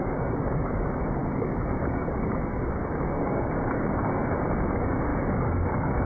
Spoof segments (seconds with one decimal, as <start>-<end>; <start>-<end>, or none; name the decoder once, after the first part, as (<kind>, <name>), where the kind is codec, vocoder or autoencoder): 0.0-6.1 (codec, DAC)